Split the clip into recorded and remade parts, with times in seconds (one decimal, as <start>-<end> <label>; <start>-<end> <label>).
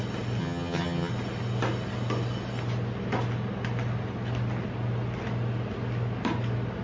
0.0-0.4 recorded; 0.4-1.1 remade; 1.1-6.8 recorded